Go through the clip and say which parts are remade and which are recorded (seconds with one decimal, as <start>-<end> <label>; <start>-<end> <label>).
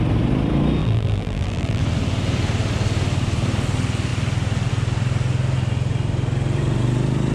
0.0-0.8 recorded; 0.8-1.8 remade; 1.8-7.3 recorded